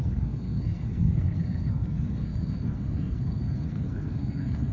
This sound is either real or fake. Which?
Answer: fake